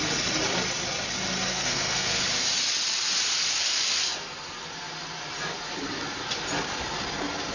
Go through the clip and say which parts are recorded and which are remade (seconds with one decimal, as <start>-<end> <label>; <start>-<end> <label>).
0.0-1.5 recorded; 1.5-2.2 remade; 2.2-7.5 recorded